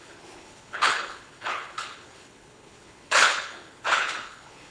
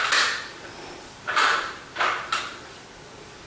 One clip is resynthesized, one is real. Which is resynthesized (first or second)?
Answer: first